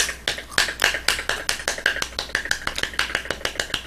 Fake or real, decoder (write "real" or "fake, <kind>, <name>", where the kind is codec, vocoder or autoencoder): real